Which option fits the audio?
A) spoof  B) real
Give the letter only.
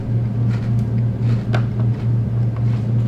B